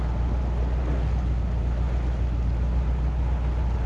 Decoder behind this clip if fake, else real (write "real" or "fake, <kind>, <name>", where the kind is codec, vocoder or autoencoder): real